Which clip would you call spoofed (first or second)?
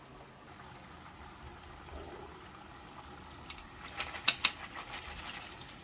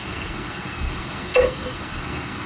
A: second